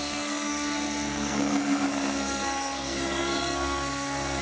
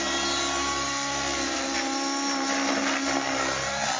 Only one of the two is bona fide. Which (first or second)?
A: second